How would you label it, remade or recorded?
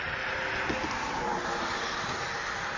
recorded